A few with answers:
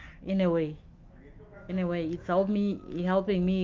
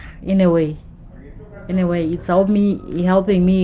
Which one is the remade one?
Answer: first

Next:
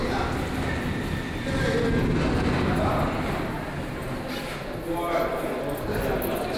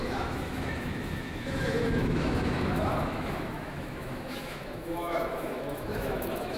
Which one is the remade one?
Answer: second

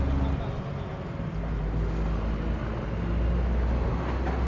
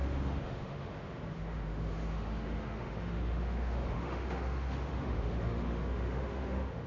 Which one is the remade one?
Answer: second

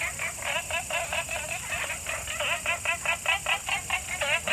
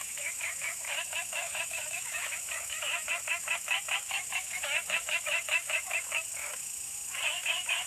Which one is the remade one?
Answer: second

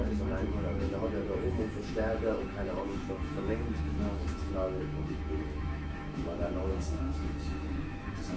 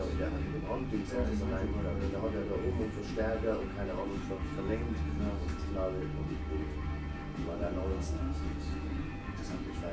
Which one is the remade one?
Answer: first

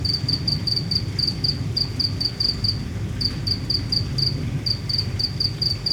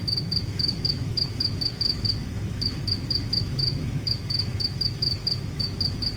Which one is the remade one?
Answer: second